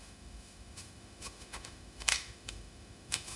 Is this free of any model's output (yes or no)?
no